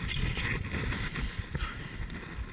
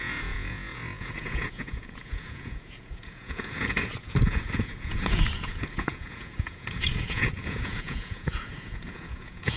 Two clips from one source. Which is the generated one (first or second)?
second